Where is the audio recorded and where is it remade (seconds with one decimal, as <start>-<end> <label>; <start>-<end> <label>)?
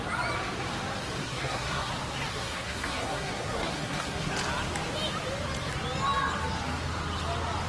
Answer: 0.0-1.2 recorded; 1.2-1.9 remade; 1.9-2.3 recorded; 2.3-4.3 remade; 4.3-7.7 recorded